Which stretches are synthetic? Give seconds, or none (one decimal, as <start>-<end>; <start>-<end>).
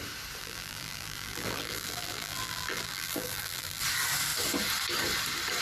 0.4-3.8